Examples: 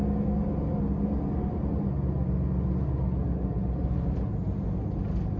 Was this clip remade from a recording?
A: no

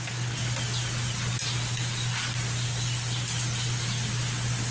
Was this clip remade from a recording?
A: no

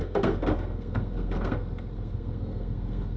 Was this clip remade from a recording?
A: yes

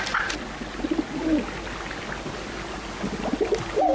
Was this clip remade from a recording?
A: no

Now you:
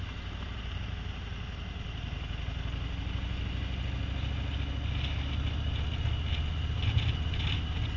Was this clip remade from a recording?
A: no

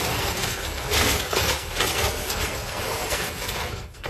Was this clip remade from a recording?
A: yes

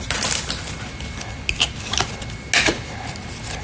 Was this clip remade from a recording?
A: no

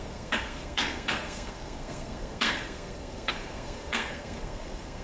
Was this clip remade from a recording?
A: yes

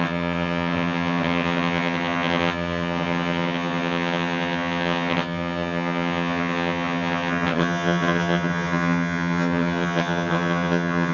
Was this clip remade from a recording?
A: yes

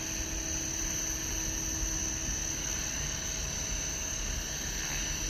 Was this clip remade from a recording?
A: no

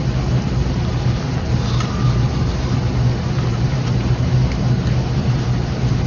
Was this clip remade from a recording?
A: no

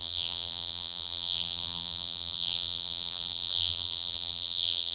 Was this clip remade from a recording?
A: yes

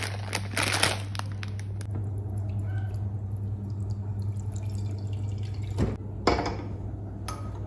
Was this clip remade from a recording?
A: no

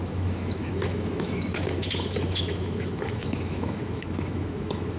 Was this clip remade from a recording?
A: yes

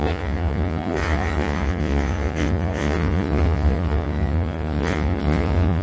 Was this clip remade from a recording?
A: yes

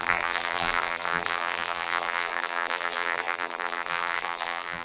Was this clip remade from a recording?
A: yes